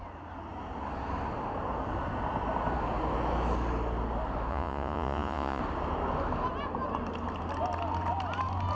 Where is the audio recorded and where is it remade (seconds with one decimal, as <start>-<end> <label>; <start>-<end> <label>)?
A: 0.0-4.5 recorded; 4.5-5.6 remade; 5.6-8.7 recorded